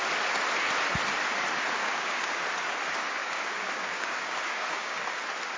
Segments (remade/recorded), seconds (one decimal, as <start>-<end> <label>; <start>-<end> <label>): 0.0-1.8 recorded; 1.8-2.4 remade; 2.4-3.2 recorded; 3.2-5.0 remade; 5.0-5.6 recorded